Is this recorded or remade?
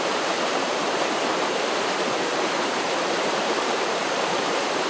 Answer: remade